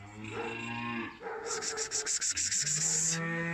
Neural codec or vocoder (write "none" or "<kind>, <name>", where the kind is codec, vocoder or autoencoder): none